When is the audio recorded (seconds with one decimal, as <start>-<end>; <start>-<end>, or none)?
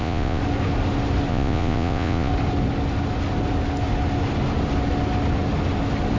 0.4-1.3; 2.3-6.2